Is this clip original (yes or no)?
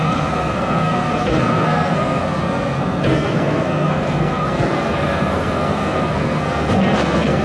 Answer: no